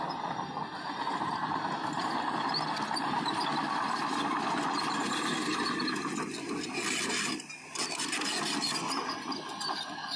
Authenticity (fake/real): real